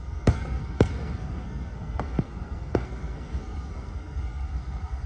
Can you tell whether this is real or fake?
fake